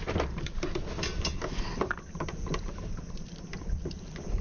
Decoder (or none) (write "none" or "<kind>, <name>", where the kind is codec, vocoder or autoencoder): vocoder, BigVGAN v2